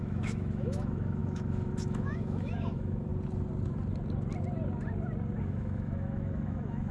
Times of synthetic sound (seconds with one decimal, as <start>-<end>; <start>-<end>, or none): 0.0-3.1; 5.4-6.9

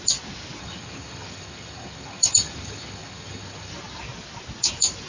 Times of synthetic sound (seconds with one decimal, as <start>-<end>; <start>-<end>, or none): 0.6-3.7

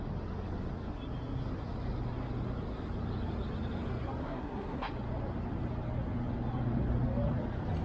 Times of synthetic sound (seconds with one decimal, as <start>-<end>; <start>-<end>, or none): 4.2-4.9

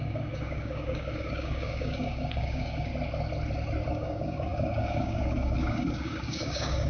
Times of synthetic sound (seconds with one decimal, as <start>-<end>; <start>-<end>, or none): 0.0-2.9; 3.9-6.9

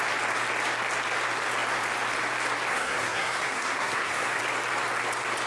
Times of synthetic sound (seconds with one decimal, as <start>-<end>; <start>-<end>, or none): 2.7-4.4

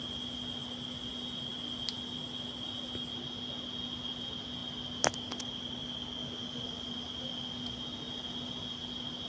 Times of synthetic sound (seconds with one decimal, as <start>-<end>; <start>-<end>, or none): none

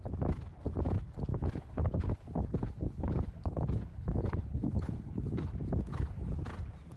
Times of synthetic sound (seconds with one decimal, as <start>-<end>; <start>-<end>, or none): 1.3-5.5; 5.9-6.4

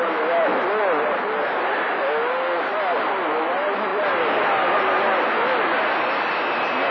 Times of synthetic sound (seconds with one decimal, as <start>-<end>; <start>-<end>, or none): none